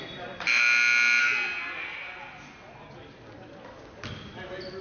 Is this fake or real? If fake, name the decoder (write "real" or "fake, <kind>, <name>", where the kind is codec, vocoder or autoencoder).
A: real